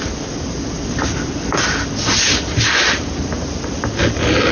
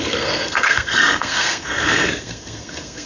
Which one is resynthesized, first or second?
second